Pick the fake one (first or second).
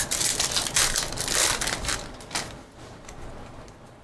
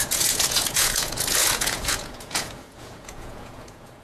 second